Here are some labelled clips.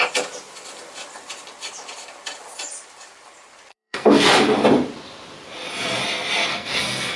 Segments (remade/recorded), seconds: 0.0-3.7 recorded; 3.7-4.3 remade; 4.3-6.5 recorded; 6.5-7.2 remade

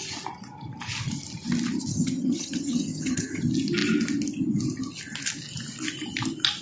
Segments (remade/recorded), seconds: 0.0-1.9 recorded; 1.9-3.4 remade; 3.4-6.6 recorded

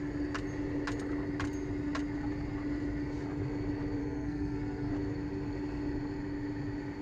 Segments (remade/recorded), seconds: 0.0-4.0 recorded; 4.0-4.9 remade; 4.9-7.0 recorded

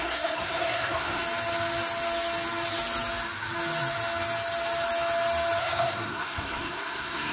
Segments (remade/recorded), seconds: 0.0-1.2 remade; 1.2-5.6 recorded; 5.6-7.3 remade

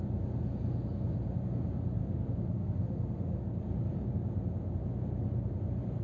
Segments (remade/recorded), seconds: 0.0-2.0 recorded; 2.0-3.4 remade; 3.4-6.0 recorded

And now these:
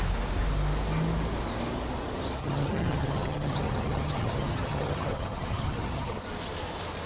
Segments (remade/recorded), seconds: 0.0-2.4 recorded; 2.4-6.2 remade; 6.2-7.1 recorded

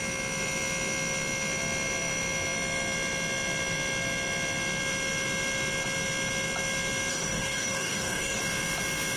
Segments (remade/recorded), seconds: 0.0-7.1 recorded; 7.1-8.4 remade; 8.4-9.2 recorded

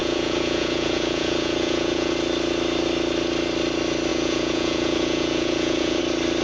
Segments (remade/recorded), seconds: 0.0-2.1 remade; 2.1-4.1 recorded; 4.1-6.0 remade; 6.0-6.4 recorded